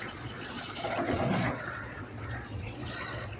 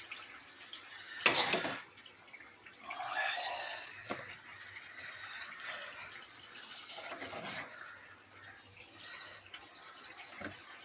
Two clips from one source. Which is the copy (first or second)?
first